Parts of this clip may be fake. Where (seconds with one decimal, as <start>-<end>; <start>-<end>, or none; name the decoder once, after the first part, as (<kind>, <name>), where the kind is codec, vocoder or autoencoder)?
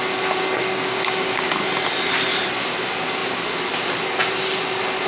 0.6-1.5 (codec, DAC)